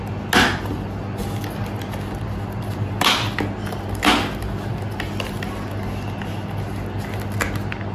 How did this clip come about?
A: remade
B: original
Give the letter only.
B